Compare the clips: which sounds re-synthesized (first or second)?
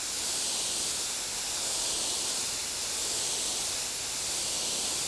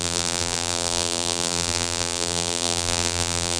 second